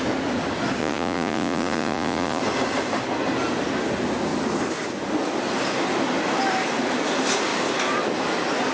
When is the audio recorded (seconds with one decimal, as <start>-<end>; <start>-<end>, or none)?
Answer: 0.0-0.8; 2.4-8.7